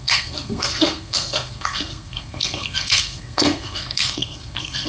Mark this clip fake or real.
fake